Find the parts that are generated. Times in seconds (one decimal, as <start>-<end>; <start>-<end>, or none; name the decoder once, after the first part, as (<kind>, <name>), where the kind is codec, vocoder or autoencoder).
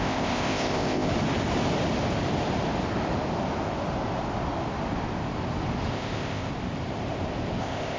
0.0-1.1 (codec, ZipCodec); 5.9-6.5; 7.6-8.0